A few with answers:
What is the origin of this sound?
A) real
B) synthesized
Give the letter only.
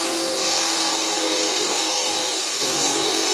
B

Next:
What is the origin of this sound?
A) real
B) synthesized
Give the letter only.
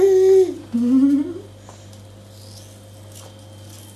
A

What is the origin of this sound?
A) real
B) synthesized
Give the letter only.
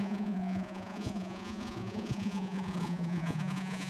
B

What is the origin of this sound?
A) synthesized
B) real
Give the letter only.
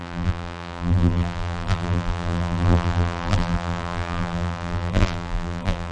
A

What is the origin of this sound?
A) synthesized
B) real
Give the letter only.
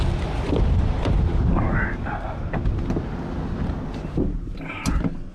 B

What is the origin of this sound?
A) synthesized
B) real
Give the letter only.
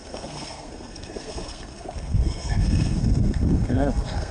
A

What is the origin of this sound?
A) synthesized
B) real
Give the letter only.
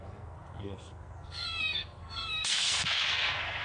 A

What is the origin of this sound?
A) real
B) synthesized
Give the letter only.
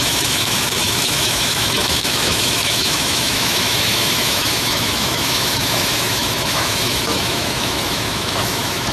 B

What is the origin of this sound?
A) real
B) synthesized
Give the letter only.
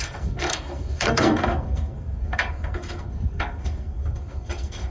B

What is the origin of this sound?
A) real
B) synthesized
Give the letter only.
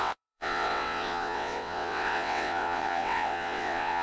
B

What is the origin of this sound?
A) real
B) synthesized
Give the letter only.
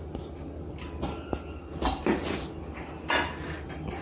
A